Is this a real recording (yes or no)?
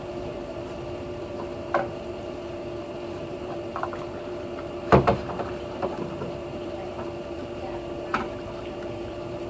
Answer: no